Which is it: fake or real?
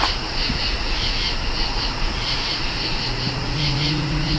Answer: fake